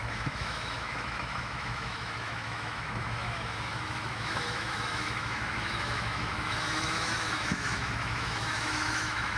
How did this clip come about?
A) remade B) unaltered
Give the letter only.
A